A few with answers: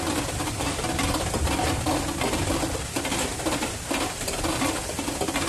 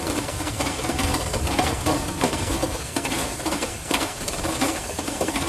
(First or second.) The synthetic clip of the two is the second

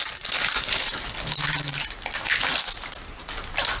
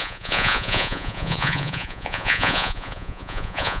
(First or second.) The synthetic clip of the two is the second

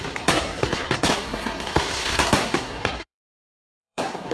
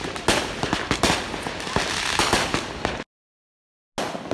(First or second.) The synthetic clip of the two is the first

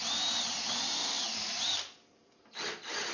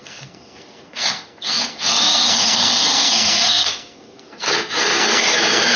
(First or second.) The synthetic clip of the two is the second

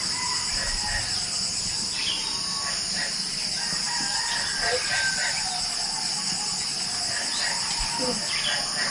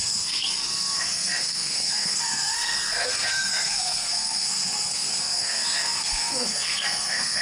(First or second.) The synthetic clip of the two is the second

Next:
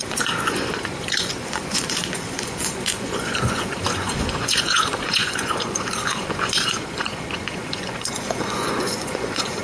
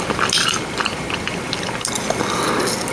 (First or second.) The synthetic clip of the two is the first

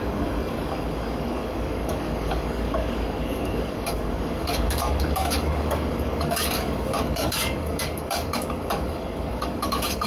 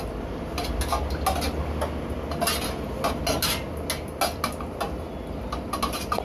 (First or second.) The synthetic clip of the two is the first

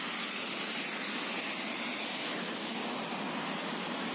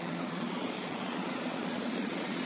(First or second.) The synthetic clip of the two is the second